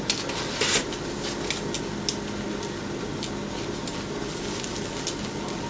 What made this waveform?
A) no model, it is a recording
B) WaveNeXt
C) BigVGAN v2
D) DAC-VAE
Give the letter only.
A